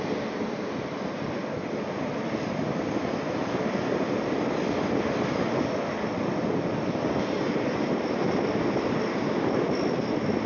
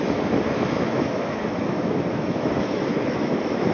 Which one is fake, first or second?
second